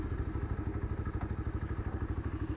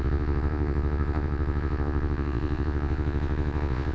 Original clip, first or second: first